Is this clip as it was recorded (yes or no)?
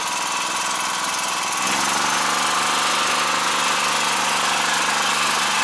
yes